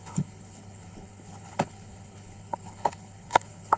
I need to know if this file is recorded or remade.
remade